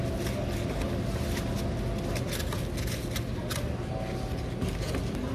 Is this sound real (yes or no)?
yes